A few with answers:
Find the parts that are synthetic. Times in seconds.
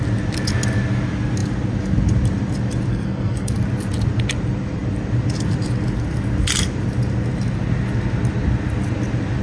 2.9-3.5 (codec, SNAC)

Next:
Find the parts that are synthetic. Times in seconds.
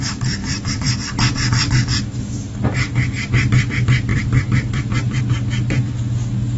0.4-1.7 (vocoder, BigVGAN v2); 4.1-5.2